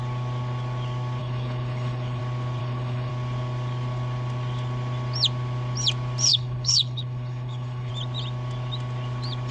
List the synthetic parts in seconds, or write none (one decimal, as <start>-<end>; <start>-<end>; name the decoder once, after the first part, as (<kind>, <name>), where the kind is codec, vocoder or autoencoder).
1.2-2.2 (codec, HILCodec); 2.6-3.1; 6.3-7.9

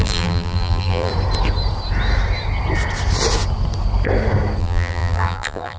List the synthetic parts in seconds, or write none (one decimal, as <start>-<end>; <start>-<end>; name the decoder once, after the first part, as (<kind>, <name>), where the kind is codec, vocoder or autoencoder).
0.0-1.1 (vocoder, BigVGAN v2); 4.6-5.8

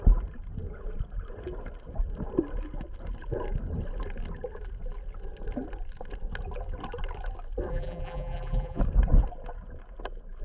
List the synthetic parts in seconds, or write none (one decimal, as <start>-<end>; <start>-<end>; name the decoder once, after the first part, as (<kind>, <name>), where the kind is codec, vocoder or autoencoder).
7.7-8.8 (vocoder, BigVGAN v2)

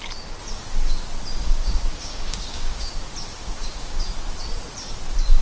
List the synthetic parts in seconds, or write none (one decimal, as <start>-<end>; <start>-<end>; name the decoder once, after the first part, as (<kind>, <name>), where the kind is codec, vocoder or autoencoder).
1.4-2.9 (codec, DAC); 3.4-4.0

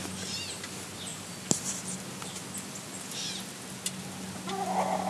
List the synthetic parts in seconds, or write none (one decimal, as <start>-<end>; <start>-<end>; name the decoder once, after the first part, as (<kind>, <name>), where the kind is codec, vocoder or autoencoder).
1.1-2.0 (vocoder, BigVGAN v2)

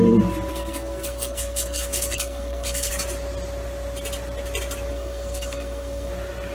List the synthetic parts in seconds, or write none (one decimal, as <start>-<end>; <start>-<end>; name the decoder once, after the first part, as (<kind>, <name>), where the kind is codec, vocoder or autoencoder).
0.5-2.9 (codec, SNAC); 4.9-6.1

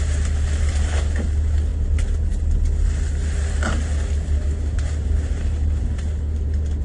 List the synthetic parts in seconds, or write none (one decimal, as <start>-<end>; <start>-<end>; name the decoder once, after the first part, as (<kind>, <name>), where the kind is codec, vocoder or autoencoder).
none